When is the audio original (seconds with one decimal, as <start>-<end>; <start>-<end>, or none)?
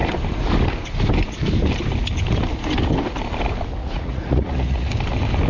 0.0-3.8; 4.9-5.5